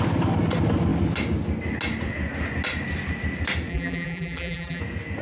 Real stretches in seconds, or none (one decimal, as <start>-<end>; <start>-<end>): 0.0-3.7; 4.8-5.2